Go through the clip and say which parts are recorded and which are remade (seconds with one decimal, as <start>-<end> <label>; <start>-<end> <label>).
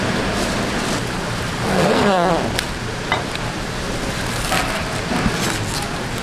0.0-1.7 recorded; 1.7-2.3 remade; 2.3-6.2 recorded